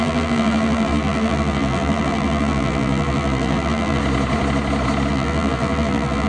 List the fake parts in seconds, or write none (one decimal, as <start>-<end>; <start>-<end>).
0.0-4.0; 5.1-6.3